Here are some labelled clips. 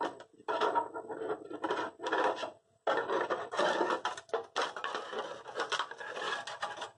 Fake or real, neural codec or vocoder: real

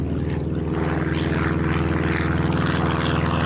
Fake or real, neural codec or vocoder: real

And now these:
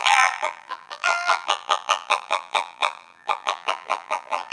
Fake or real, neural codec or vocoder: fake, vocoder, BigVGAN v2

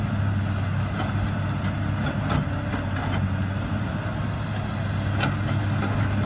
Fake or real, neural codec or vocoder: real